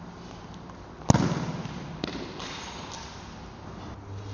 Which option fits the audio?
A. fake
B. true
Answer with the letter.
B